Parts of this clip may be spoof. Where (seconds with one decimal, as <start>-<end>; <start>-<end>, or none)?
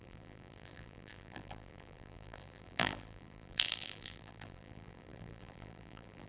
0.0-6.3